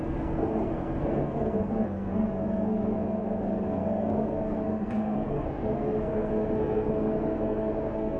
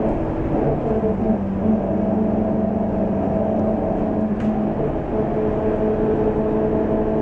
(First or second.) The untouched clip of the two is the second